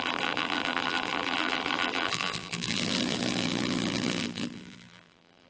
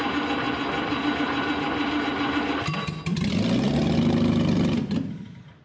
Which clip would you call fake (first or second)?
first